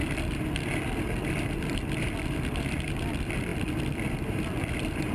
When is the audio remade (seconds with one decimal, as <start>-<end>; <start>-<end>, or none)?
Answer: none